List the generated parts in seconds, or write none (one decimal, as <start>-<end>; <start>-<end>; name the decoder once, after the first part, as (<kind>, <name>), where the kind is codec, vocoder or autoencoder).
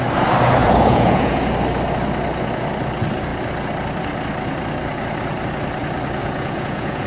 0.6-1.5 (vocoder, Vocos); 6.2-7.1